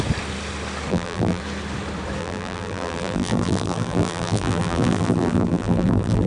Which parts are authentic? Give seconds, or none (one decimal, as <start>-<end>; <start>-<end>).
0.0-0.9; 1.4-2.2